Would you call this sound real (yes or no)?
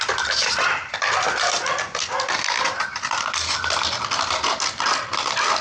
yes